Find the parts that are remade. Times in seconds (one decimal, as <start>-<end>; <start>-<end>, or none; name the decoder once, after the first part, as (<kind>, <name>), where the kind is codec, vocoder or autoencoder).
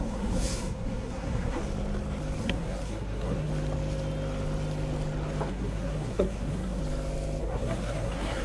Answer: 0.0-1.6 (codec, SNAC); 2.4-3.5; 5.5-6.8; 7.4-8.4